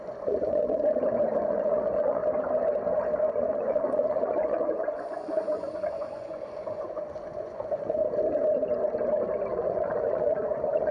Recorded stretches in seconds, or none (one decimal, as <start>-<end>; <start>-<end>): 0.8-1.4; 2.2-3.3; 8.0-9.5